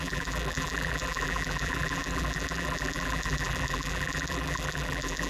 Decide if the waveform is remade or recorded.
remade